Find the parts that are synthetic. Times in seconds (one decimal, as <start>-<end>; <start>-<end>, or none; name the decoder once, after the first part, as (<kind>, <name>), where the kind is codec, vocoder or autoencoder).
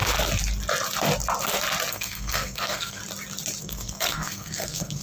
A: 1.9-3.0 (codec, SNAC); 3.6-5.0